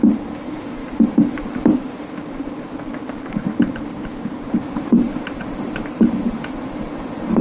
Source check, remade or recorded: remade